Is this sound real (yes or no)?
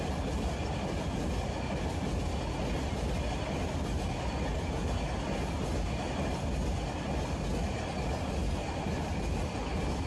yes